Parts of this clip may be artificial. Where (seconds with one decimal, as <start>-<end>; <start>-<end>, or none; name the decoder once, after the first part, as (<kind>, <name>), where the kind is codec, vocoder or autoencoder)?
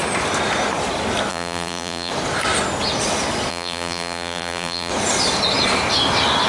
1.3-2.1 (vocoder, BigVGAN v2); 3.5-4.9